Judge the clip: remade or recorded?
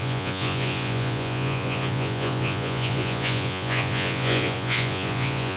remade